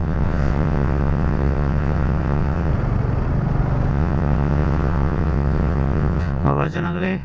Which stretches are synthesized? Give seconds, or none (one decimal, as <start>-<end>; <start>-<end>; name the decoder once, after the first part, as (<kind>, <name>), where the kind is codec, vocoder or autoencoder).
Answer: 0.0-2.7 (vocoder, WaveNeXt); 3.9-7.2